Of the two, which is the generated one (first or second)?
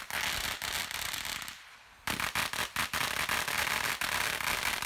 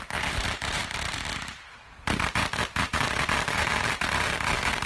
second